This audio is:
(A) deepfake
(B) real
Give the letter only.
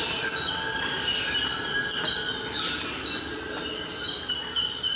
B